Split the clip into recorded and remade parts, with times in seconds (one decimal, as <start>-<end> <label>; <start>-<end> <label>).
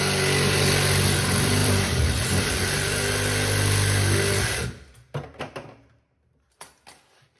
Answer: 0.0-1.6 recorded; 1.6-2.5 remade; 2.5-7.4 recorded